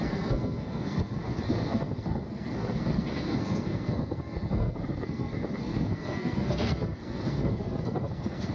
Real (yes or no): no